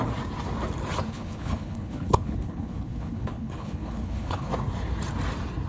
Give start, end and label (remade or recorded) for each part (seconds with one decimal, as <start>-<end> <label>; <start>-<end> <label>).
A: 0.0-1.1 recorded; 1.1-4.5 remade; 4.5-5.7 recorded